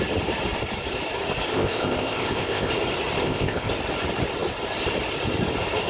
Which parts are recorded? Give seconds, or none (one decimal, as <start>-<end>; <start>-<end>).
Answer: 0.0-1.5; 2.7-3.2; 3.7-5.9